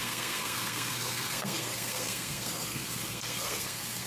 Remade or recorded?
remade